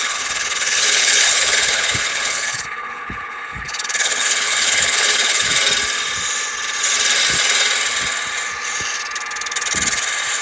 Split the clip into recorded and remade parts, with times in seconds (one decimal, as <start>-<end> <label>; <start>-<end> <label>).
0.0-5.5 remade; 5.5-10.4 recorded